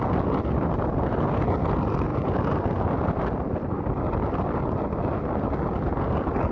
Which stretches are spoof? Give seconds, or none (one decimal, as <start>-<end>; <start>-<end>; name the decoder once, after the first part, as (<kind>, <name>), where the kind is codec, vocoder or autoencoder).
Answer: none